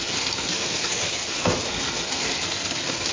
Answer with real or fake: fake